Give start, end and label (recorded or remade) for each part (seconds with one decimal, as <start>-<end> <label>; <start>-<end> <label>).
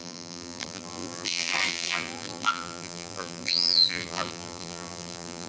0.0-5.5 remade